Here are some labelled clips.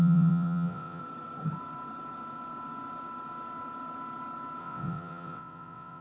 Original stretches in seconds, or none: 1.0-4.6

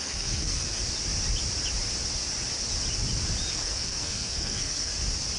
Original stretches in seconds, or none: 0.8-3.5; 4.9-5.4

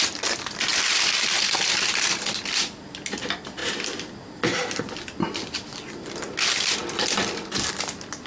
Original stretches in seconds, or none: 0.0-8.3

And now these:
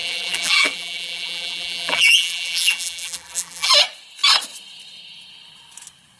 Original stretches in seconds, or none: 3.7-6.2

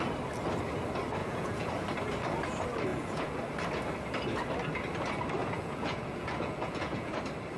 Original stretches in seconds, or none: 0.0-1.2; 1.7-2.9; 3.4-5.4; 7.1-7.6

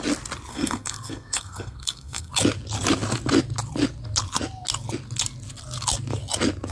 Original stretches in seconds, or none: 0.0-0.5; 2.3-6.7

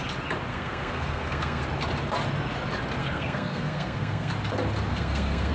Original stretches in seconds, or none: 0.0-0.5; 1.6-3.0; 4.3-4.9